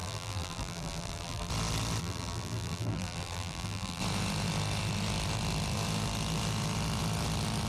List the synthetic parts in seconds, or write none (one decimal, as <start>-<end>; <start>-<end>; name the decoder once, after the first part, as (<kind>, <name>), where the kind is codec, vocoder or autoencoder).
0.0-1.5 (vocoder, BigVGAN v2); 2.0-4.0